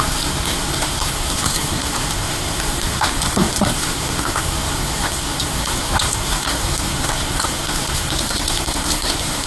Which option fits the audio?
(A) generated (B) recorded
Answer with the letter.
A